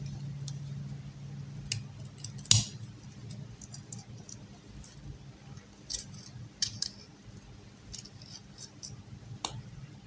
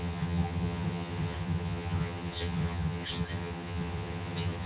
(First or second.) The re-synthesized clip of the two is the second